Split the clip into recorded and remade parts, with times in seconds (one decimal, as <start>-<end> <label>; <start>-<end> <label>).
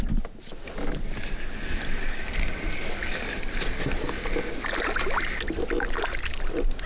0.0-6.9 recorded